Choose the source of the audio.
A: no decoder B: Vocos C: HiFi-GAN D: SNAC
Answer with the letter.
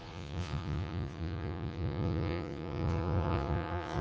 B